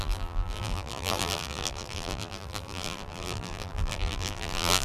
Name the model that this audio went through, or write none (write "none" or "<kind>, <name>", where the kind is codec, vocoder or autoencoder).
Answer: vocoder, BigVGAN v2